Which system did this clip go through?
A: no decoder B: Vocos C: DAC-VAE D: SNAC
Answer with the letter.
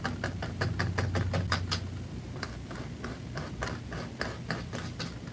A